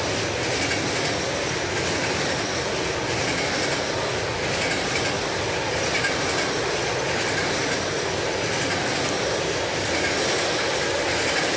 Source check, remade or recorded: recorded